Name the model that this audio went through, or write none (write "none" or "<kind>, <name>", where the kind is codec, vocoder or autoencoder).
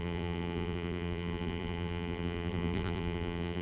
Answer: vocoder, BigVGAN v2